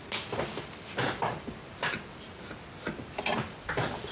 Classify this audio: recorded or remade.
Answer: recorded